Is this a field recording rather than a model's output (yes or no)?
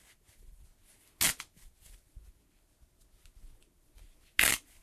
yes